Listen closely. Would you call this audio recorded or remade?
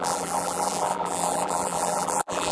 remade